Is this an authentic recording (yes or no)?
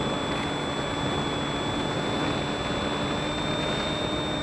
yes